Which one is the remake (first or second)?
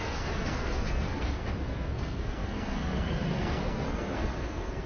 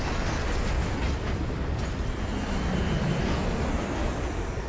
first